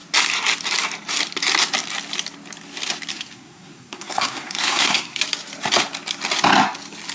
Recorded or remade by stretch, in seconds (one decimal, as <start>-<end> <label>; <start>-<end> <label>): 0.0-3.1 recorded; 3.1-5.2 remade; 5.2-7.1 recorded